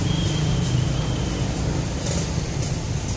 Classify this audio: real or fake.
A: real